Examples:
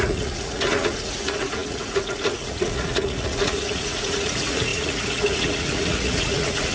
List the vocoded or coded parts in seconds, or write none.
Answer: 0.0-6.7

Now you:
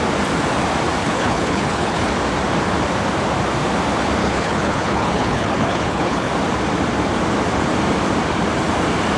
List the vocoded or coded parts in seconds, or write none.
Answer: 1.0-2.1; 4.2-6.3

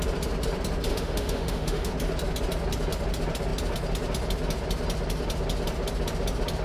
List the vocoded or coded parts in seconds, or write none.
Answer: 0.9-1.9

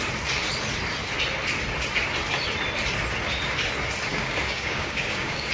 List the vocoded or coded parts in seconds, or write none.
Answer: 4.1-5.5

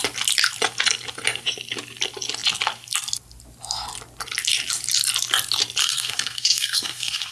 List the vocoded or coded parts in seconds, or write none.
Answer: 5.8-7.3

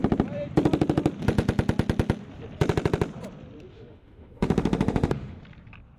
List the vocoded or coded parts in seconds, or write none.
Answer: 3.7-5.4